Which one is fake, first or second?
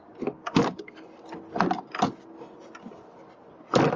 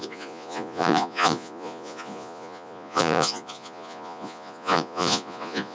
second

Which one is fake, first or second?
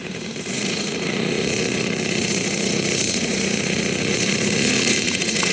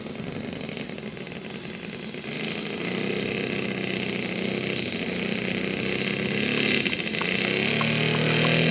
first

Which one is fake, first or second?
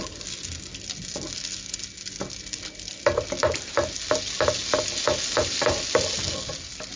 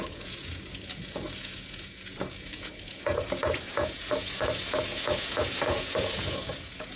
second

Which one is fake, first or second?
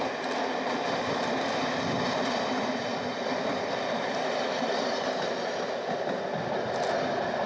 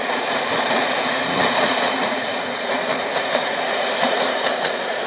second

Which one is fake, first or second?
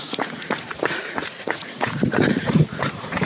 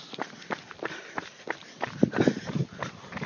first